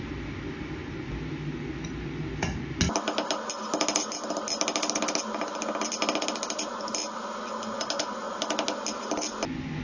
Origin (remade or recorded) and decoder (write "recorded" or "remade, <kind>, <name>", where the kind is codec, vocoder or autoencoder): recorded